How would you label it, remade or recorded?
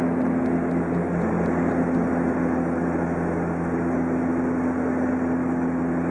recorded